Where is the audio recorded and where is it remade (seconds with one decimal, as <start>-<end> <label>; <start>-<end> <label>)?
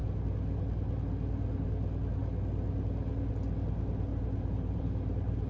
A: 0.0-4.1 recorded; 4.1-5.5 remade